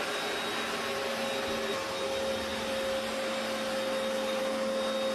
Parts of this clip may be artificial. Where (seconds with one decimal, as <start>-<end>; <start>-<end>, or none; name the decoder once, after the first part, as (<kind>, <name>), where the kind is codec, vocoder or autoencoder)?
none